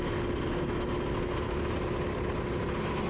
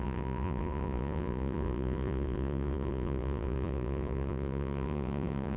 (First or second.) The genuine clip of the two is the first